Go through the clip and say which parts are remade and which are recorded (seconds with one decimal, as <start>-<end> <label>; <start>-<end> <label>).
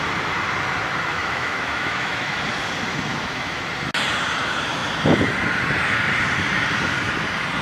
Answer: 0.0-1.1 recorded; 1.1-2.4 remade; 2.4-3.1 recorded; 3.1-3.6 remade; 3.6-7.6 recorded